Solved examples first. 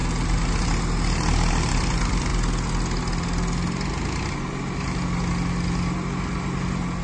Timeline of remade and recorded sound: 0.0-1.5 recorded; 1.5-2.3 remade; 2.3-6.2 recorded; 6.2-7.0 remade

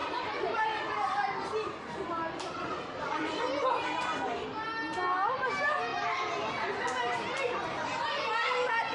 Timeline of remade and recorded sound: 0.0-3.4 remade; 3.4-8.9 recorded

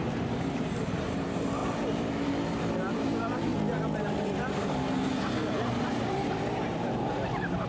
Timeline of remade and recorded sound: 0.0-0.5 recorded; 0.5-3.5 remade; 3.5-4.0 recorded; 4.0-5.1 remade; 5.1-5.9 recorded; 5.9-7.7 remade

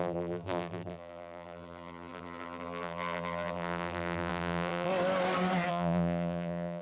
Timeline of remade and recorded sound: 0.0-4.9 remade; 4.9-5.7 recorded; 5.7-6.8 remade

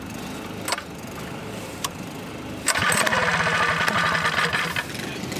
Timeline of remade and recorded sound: 0.0-1.4 recorded; 1.4-2.1 remade; 2.1-5.4 recorded

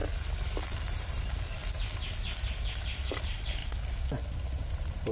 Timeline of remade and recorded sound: 0.0-0.8 recorded; 0.8-1.6 remade; 1.6-3.2 recorded; 3.2-3.6 remade; 3.6-4.4 recorded; 4.4-5.1 remade

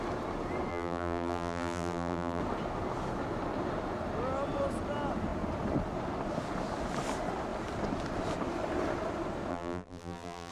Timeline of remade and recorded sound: 0.0-0.7 recorded; 0.7-2.4 remade; 2.4-9.5 recorded; 9.5-10.5 remade

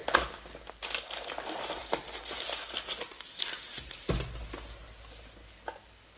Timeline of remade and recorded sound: 0.0-1.8 recorded; 1.8-2.6 remade; 2.6-6.2 recorded